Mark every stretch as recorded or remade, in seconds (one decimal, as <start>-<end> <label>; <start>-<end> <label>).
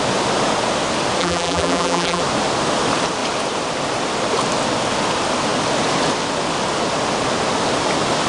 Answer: 0.0-1.2 recorded; 1.2-2.2 remade; 2.2-8.3 recorded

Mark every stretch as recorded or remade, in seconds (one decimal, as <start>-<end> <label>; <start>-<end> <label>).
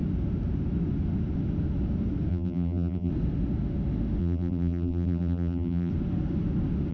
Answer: 0.0-2.3 recorded; 2.3-3.1 remade; 3.1-4.2 recorded; 4.2-5.9 remade; 5.9-6.9 recorded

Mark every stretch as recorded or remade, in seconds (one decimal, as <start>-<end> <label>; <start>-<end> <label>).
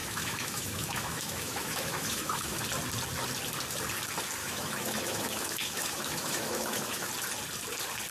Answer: 0.0-2.6 remade; 2.6-4.4 recorded; 4.4-7.1 remade; 7.1-8.1 recorded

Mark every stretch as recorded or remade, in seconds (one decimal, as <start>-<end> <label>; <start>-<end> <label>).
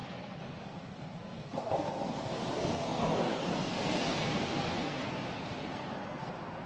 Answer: 0.0-6.7 remade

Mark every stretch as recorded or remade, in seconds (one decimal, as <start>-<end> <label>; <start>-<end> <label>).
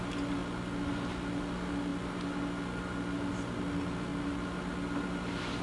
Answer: 0.0-5.6 recorded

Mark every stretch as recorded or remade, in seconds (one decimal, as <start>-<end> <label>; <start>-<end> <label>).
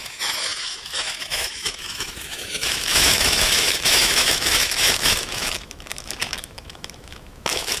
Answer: 0.0-7.8 remade